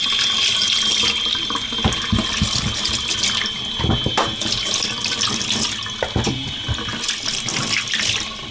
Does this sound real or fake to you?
real